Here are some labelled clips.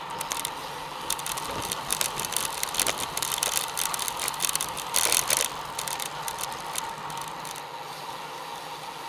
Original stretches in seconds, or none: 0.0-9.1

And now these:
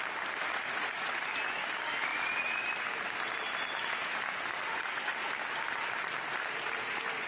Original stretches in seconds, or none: 0.0-0.5; 1.2-4.6; 5.3-7.3